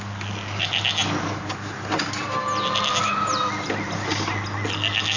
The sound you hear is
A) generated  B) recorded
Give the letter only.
B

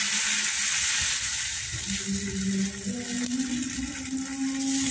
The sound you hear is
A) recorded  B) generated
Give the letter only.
A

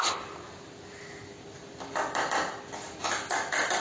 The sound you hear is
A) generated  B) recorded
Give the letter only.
B